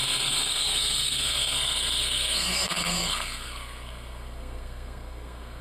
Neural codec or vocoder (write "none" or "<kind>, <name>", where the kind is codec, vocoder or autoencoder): codec, SNAC